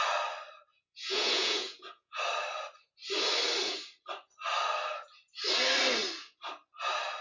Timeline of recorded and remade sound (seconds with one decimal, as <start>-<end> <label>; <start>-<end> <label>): 0.0-0.7 recorded; 0.7-2.2 remade; 2.2-7.2 recorded